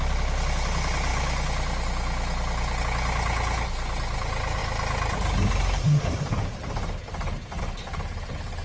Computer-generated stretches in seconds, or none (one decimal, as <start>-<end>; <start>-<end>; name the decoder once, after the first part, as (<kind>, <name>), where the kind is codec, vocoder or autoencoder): none